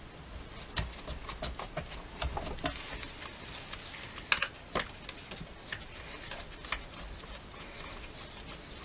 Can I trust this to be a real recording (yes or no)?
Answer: yes